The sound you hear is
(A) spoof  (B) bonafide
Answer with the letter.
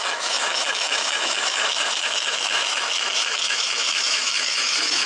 A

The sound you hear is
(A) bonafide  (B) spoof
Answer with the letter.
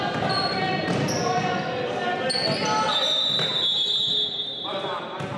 A